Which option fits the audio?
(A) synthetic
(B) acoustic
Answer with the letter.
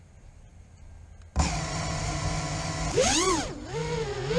B